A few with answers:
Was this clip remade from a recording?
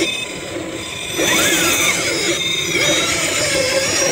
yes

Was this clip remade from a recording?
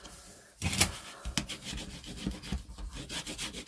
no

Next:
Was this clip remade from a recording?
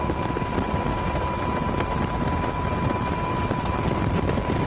yes